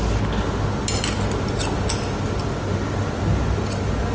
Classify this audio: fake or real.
real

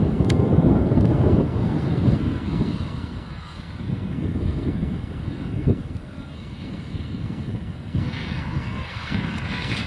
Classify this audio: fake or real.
fake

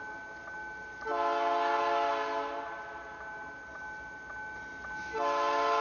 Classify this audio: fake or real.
real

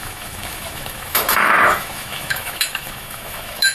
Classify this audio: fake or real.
fake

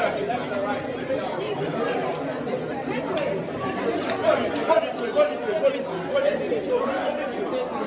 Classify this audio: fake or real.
real